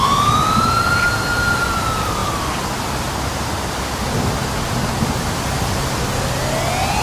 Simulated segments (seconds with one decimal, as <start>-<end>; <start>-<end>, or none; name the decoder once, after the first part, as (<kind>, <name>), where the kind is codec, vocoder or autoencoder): none